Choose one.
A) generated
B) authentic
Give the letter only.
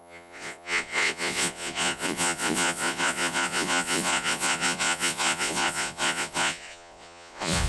A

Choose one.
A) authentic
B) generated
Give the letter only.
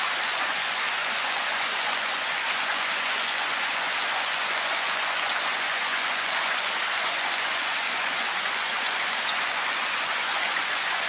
B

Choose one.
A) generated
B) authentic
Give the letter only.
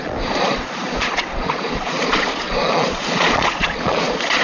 A